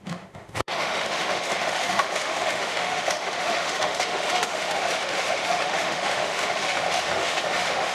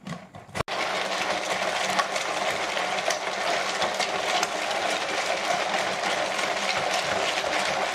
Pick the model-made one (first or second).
first